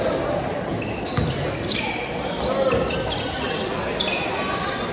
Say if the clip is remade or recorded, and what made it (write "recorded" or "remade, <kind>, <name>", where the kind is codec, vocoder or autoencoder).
recorded